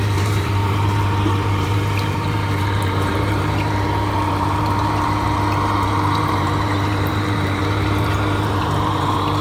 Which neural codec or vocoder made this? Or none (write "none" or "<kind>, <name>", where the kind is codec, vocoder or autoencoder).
vocoder, BigVGAN v2